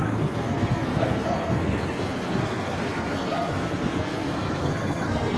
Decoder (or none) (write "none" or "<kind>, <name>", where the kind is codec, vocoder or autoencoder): codec, SNAC